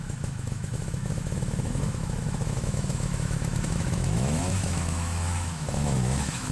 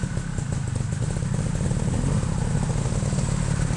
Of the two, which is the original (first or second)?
second